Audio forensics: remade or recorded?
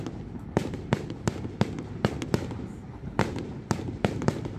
recorded